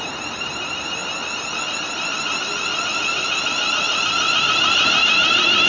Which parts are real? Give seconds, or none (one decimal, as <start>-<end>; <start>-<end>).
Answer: 1.0-4.4